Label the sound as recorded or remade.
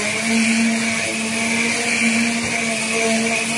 recorded